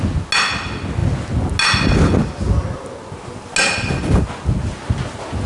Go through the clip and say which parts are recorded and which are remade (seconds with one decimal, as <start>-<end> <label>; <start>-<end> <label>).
0.0-5.5 recorded